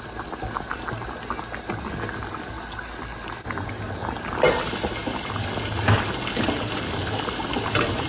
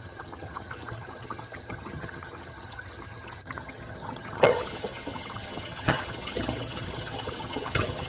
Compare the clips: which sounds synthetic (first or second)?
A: second